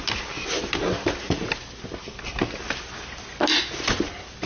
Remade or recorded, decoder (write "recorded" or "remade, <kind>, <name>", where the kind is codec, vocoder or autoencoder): recorded